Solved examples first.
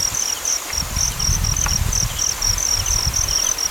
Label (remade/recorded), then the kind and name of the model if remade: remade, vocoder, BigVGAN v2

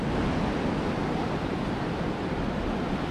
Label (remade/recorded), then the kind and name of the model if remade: recorded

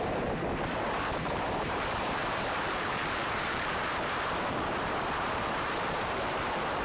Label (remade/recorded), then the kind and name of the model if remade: remade, vocoder, BigVGAN v2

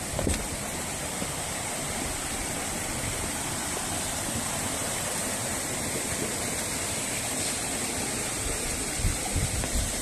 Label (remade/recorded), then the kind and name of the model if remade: recorded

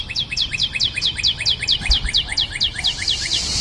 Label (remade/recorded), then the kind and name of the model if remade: remade, vocoder, BigVGAN v2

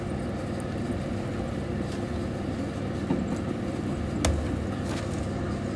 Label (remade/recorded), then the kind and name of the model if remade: recorded